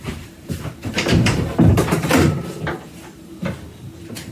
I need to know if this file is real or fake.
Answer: fake